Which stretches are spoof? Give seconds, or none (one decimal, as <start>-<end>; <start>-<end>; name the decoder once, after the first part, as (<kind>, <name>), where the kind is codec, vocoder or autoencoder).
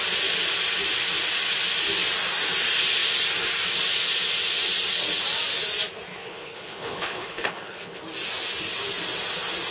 6.1-8.0 (codec, HILCodec)